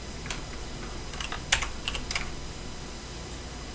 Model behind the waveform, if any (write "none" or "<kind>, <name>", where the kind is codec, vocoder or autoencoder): none